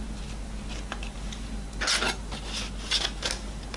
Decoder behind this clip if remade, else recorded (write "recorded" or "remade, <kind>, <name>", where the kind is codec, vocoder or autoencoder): recorded